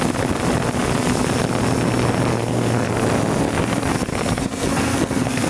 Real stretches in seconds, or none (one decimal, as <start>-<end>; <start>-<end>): 0.0-2.3; 2.9-4.1